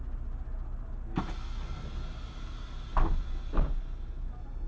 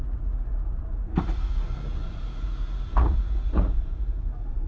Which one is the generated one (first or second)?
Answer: second